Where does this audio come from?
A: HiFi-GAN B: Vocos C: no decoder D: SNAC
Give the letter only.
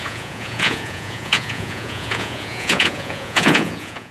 B